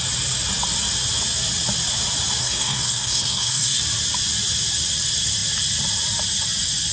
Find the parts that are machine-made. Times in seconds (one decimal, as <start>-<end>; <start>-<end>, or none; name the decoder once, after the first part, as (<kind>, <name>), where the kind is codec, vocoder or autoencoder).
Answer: 2.4-3.8 (codec, SNAC)